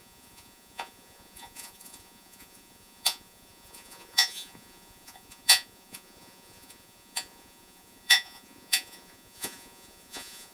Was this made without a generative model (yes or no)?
no